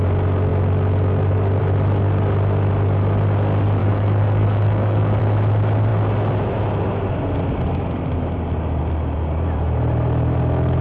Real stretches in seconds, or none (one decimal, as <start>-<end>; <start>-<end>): 0.0-3.8; 5.2-10.8